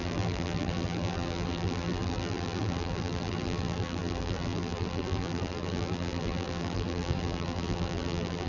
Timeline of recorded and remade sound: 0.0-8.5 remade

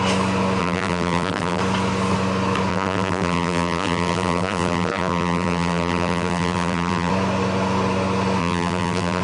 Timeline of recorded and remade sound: 0.0-0.6 recorded; 0.6-1.6 remade; 1.6-2.7 recorded; 2.7-7.1 remade; 7.1-8.4 recorded; 8.4-9.2 remade

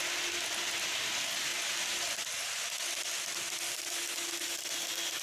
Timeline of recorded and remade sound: 0.0-5.2 recorded